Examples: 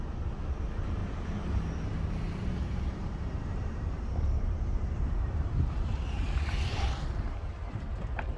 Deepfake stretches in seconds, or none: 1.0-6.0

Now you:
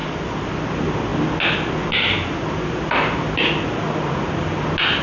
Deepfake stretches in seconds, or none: 0.0-0.5